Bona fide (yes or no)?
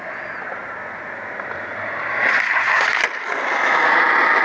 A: yes